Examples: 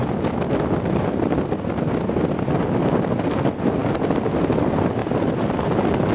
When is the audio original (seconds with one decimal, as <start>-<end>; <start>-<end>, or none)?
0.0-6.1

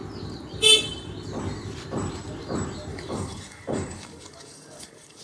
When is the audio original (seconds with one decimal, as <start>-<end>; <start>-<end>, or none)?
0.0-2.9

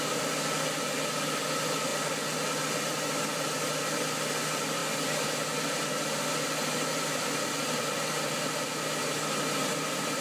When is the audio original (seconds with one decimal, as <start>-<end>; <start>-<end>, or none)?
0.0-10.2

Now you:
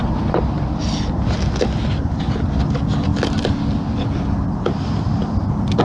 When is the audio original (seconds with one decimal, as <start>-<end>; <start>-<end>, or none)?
0.0-5.8

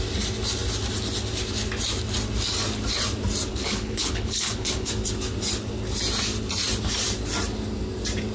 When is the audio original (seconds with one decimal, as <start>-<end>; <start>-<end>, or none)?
0.0-3.5; 4.9-8.3

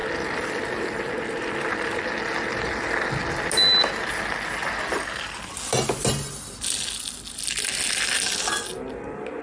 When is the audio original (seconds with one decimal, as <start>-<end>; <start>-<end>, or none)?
0.0-9.4

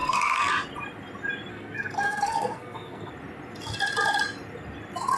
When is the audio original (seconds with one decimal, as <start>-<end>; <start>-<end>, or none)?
0.5-1.5; 3.1-5.2